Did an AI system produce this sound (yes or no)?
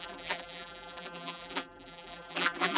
yes